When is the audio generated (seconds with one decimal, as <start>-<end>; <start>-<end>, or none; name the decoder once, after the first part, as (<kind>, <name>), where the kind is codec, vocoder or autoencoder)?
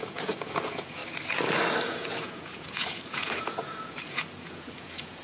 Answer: 0.0-1.0 (vocoder, Vocos); 1.8-5.2